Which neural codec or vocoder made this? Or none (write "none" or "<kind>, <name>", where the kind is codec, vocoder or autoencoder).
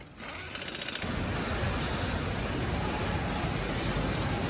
none